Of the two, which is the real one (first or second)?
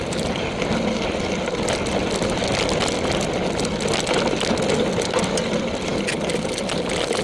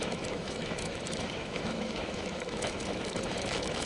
first